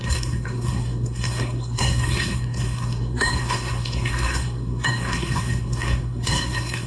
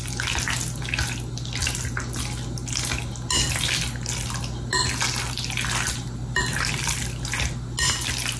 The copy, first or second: first